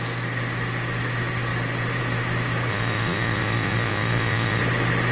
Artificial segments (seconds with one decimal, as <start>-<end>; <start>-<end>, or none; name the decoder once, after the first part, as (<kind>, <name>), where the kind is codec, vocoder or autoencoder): 2.7-4.6 (vocoder, Vocos)